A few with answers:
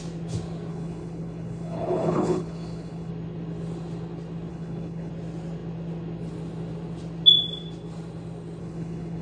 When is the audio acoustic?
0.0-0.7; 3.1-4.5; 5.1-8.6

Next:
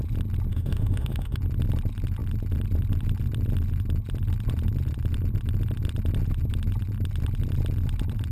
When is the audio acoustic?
0.0-0.5; 1.4-8.3

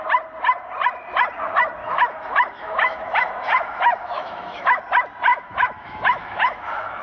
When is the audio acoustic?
0.0-1.8; 4.8-5.3

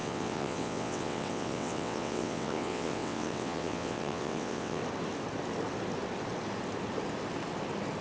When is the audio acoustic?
4.8-8.0

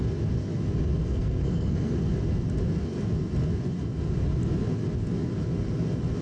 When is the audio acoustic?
0.0-1.0; 2.0-6.2